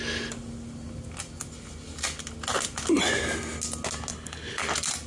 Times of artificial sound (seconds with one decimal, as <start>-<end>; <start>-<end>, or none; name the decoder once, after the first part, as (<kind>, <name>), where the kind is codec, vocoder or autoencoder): 4.1-4.6 (codec, HILCodec)